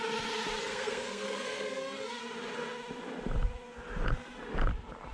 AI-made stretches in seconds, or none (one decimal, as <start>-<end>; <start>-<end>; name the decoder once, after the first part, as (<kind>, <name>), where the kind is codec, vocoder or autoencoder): 0.6-2.2 (codec, SNAC)